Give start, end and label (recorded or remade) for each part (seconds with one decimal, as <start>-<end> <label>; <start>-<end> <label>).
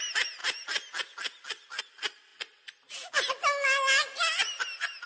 0.0-5.1 recorded